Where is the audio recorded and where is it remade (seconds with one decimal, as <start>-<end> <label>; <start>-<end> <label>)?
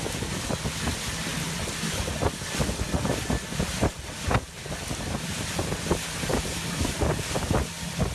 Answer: 0.0-8.1 recorded